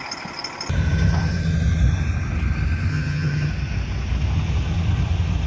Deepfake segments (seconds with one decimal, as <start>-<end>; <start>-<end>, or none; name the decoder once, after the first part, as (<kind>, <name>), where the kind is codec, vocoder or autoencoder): 2.9-3.5 (vocoder, HiFi-GAN)